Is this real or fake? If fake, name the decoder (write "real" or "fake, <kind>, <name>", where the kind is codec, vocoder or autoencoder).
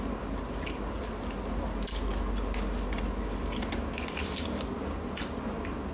real